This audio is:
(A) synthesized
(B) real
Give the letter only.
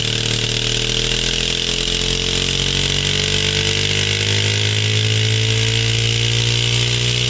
B